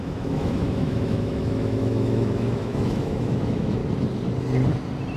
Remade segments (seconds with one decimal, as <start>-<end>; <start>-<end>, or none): 0.0-3.8